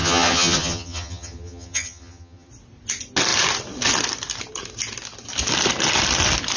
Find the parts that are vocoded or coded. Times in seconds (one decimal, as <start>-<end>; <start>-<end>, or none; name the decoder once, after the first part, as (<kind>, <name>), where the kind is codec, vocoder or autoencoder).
0.0-2.5 (vocoder, HiFi-GAN)